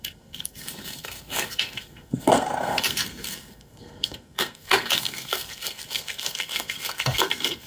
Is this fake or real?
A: fake